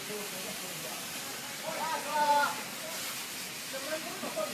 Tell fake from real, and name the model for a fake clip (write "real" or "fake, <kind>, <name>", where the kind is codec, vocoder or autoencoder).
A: real